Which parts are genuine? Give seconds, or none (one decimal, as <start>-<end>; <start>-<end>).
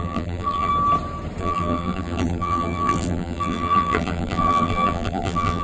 0.7-1.4